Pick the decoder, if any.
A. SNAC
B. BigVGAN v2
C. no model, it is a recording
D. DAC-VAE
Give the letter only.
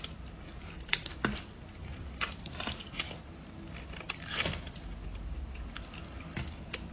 C